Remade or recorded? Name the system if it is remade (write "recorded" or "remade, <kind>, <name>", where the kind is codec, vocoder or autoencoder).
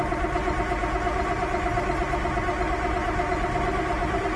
recorded